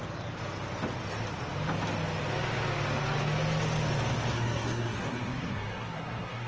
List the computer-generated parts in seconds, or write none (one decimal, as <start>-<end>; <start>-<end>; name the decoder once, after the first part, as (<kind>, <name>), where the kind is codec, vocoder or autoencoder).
4.3-6.5 (codec, SNAC)

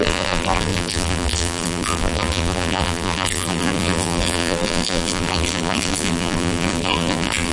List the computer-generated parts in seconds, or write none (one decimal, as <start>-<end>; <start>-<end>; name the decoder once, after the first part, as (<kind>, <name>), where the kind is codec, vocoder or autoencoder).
0.0-7.5 (vocoder, BigVGAN v2)

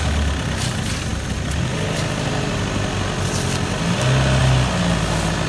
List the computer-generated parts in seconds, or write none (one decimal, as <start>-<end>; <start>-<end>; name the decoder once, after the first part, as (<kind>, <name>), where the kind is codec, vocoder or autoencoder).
none